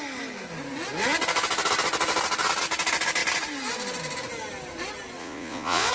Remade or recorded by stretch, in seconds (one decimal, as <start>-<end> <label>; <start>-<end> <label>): 0.0-5.2 recorded; 5.2-5.9 remade